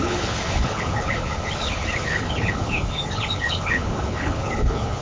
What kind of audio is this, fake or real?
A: fake